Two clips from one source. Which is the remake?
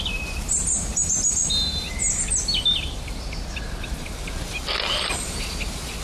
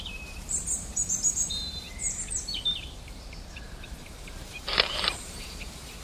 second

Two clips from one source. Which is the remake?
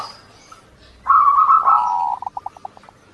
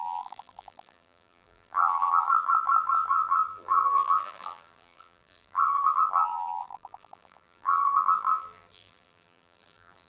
second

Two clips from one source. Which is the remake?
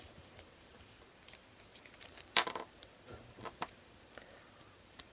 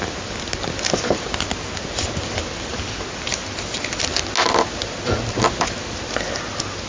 first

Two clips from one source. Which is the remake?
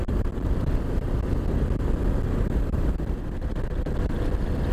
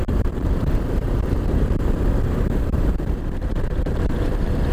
second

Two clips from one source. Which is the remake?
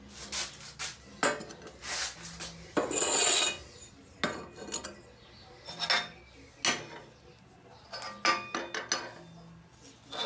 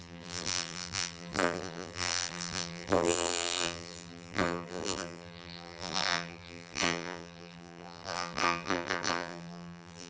second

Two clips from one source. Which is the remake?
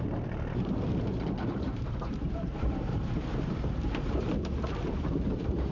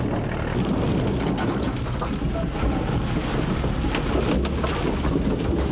first